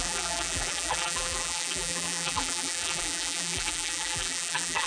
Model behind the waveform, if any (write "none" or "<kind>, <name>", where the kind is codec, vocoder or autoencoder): vocoder, BigVGAN v2